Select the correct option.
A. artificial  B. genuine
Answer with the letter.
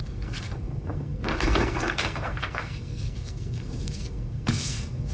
A